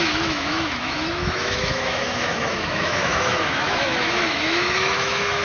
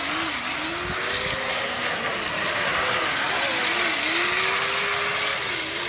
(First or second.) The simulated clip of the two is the first